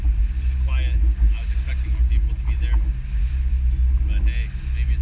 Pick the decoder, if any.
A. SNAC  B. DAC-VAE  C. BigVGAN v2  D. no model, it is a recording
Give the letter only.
D